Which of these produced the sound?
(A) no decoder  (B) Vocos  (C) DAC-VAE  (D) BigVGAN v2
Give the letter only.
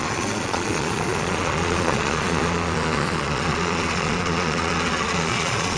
B